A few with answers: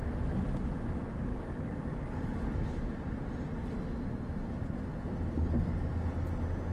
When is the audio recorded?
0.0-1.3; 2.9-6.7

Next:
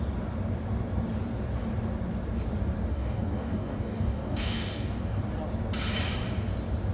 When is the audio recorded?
0.0-2.9; 5.2-6.9

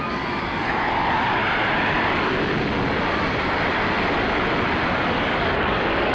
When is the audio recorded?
1.4-5.1